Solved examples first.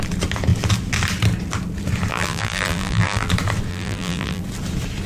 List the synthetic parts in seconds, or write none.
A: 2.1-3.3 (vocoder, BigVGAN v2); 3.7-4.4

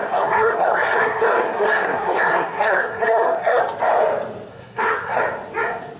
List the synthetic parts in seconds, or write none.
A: 0.0-3.6 (codec, SNAC); 4.5-5.2

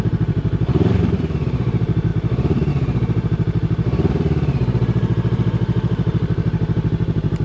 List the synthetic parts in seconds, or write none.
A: 0.0-2.1 (vocoder, BigVGAN v2); 2.7-7.4

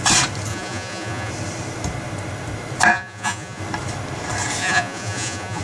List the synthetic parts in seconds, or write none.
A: 0.5-1.3 (vocoder, Vocos); 2.9-3.6; 4.6-5.6